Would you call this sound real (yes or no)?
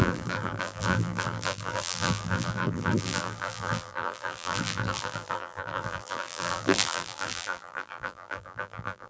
no